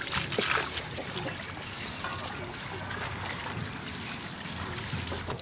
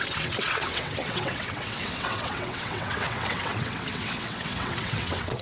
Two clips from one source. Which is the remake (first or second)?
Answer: second